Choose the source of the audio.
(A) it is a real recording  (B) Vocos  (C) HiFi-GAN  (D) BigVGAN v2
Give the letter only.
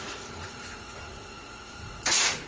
B